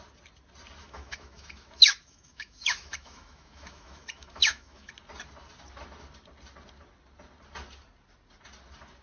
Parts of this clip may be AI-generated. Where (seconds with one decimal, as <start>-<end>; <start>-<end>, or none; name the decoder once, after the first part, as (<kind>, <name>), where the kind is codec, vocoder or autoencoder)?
0.8-4.9 (autoencoder, DAC-VAE)